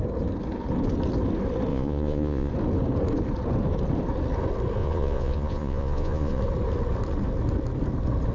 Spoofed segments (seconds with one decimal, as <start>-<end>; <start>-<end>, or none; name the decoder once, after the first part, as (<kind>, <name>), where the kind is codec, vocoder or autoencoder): 1.7-2.5 (vocoder, Vocos); 4.8-6.4